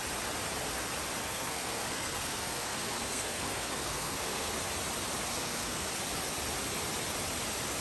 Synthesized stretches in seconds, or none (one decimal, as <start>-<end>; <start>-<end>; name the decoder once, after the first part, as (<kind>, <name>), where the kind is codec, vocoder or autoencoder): 1.2-4.5 (codec, SNAC); 5.3-5.9